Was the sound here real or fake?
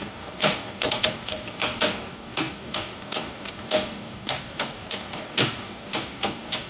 fake